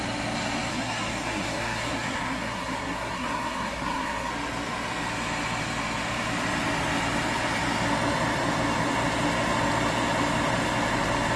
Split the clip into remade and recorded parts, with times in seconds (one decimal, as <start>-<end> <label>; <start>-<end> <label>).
0.0-0.7 recorded; 0.7-4.3 remade; 4.3-11.4 recorded